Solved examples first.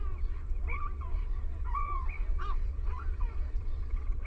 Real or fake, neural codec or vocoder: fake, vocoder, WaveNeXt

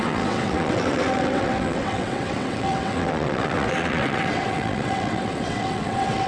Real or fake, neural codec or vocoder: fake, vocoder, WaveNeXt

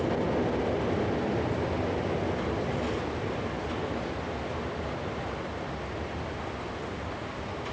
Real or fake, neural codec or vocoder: real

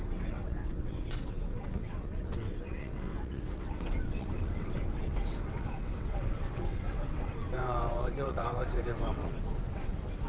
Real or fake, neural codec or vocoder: fake, vocoder, WaveNeXt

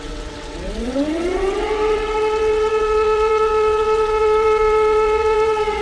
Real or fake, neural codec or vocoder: fake, vocoder, WaveNeXt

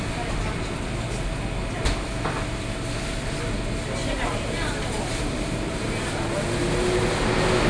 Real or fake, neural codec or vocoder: real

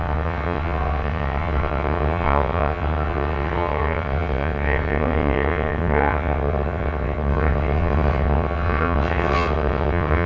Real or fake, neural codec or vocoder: fake, vocoder, WaveNeXt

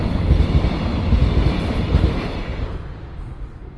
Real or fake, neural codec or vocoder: real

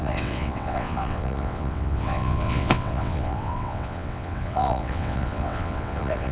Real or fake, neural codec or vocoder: fake, vocoder, WaveNeXt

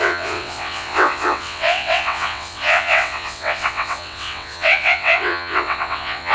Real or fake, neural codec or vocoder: fake, vocoder, WaveNeXt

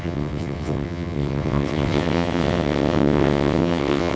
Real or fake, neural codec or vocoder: fake, vocoder, WaveNeXt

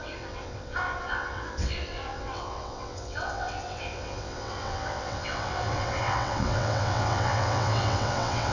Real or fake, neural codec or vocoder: fake, vocoder, WaveNeXt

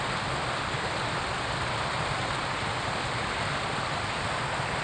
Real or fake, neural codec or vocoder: real